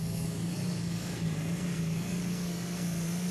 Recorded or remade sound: remade